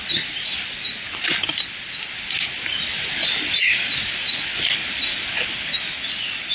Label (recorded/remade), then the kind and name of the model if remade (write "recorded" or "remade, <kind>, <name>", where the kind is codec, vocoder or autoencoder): recorded